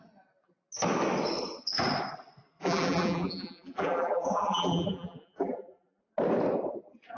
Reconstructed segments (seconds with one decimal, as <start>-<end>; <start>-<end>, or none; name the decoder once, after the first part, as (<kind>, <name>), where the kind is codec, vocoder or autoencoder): 2.6-6.0 (vocoder, BigVGAN v2)